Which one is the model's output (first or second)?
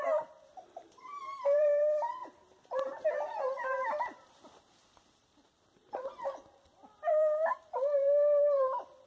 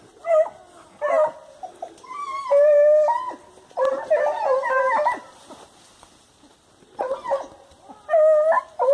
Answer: first